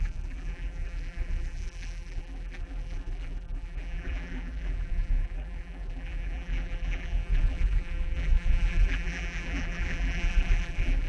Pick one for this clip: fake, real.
fake